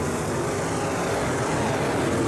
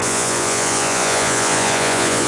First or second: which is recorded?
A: first